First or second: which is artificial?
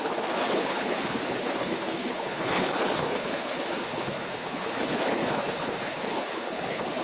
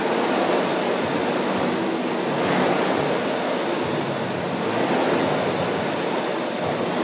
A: first